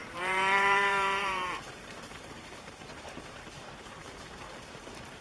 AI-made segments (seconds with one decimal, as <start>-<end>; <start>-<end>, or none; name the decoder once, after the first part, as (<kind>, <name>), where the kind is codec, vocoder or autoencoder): 0.0-4.0 (vocoder, BigVGAN v2); 4.8-5.2